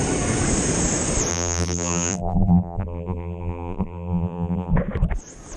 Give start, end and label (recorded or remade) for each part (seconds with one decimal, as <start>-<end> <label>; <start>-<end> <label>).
0.0-1.3 recorded; 1.3-4.7 remade; 4.7-5.6 recorded